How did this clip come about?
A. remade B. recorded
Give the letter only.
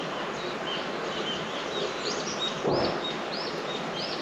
B